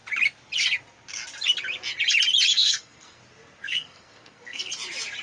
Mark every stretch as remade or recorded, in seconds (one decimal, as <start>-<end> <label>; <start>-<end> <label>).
0.0-2.5 recorded; 2.5-3.2 remade; 3.2-3.6 recorded; 3.6-4.7 remade; 4.7-5.2 recorded